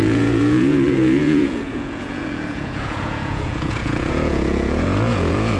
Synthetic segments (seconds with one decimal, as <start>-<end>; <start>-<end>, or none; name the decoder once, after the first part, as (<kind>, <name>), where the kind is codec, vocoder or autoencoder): 0.0-5.6 (vocoder, Vocos)